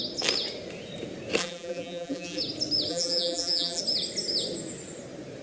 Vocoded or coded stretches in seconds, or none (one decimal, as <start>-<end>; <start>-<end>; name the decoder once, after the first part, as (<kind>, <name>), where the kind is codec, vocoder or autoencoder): 1.4-2.4 (vocoder, BigVGAN v2); 2.9-3.8